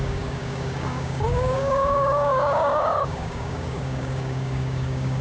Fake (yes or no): yes